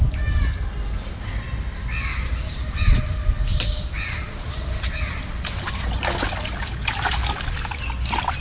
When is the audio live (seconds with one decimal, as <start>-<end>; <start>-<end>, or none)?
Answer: 0.0-2.1; 3.0-3.5; 5.2-8.4